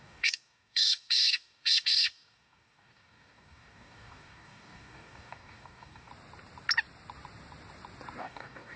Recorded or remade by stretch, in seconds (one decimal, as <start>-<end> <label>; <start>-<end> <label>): 0.0-6.1 remade; 6.1-8.2 recorded; 8.2-8.8 remade